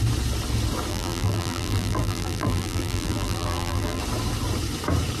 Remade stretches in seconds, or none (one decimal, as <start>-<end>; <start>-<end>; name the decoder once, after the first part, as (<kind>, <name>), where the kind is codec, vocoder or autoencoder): 0.9-4.0 (vocoder, BigVGAN v2)